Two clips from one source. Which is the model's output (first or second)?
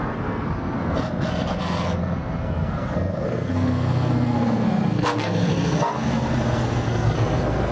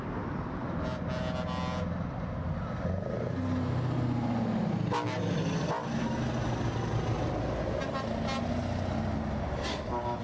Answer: first